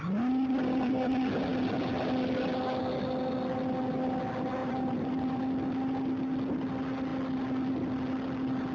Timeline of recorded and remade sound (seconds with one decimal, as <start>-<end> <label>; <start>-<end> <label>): 0.0-4.6 recorded; 4.6-5.4 remade; 5.4-8.7 recorded